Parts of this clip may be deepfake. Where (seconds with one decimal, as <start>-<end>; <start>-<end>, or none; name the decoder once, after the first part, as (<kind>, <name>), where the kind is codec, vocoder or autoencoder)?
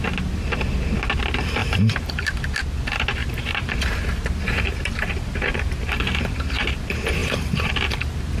1.6-2.2 (vocoder, BigVGAN v2); 3.2-6.7; 7.2-7.7